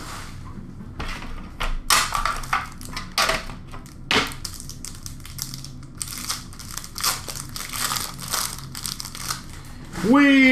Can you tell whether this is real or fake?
real